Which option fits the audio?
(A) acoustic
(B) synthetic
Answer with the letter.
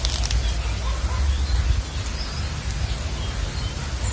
A